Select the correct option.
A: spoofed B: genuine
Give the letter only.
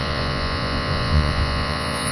A